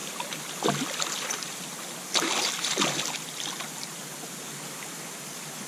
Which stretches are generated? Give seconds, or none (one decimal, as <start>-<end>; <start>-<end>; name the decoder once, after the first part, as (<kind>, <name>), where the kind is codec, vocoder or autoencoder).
none